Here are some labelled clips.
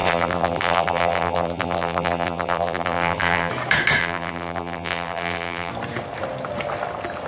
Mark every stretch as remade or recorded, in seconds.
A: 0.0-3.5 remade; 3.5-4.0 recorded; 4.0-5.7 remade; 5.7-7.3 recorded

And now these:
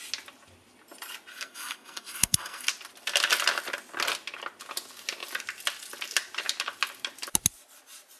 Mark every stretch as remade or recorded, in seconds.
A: 0.0-1.3 recorded; 1.3-2.7 remade; 2.7-8.2 recorded

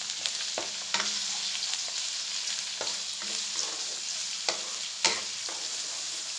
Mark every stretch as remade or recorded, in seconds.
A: 0.0-6.4 recorded

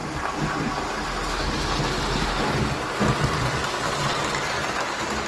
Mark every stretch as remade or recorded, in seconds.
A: 0.0-5.3 recorded

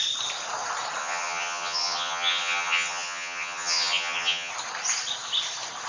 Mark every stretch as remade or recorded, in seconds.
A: 0.0-1.0 recorded; 1.0-4.5 remade; 4.5-5.9 recorded

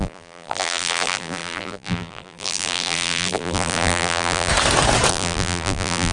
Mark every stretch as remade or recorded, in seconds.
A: 0.0-4.5 remade; 4.5-5.1 recorded; 5.1-6.1 remade